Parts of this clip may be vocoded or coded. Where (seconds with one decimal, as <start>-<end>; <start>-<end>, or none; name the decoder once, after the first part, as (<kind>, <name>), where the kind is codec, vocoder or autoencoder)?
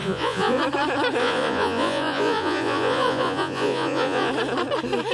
0.0-0.6 (vocoder, Vocos); 1.2-4.3